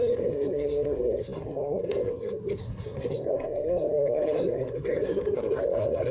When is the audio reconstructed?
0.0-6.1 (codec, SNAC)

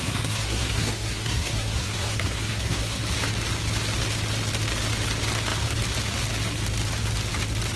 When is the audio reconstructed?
0.0-3.0 (codec, SNAC)